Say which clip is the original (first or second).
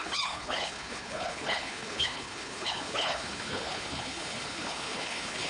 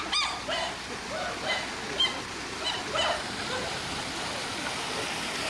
second